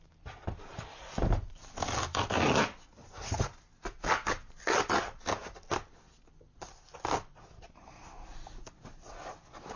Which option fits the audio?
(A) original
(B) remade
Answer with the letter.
A